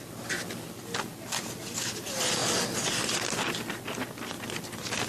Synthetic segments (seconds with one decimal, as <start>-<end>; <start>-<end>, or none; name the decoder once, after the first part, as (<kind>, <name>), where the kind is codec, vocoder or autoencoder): none